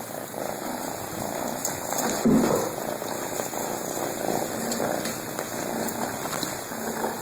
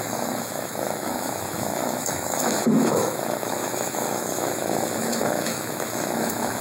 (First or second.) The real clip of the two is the first